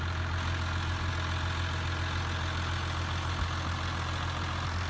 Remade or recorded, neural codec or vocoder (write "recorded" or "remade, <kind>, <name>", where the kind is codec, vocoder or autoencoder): recorded